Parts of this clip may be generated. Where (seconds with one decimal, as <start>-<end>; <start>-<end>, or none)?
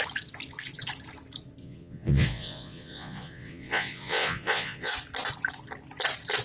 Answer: 1.6-4.9